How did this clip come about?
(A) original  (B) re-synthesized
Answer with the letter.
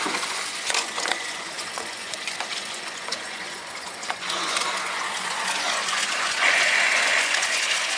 B